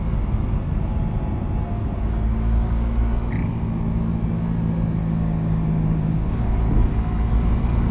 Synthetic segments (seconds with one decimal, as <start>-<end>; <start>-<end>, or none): 2.3-3.0; 5.0-6.6